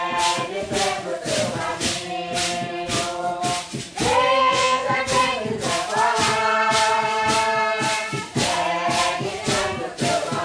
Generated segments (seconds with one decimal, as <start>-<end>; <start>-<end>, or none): 4.4-5.0